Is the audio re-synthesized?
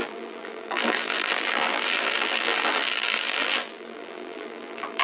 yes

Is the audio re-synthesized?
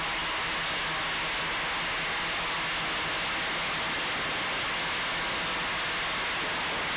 no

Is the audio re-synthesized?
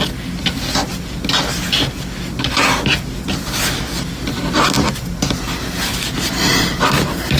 no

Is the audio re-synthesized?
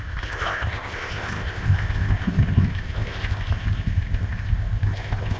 yes